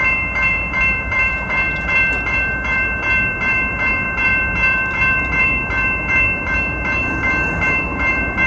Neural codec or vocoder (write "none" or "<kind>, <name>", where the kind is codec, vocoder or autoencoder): vocoder, BigVGAN v2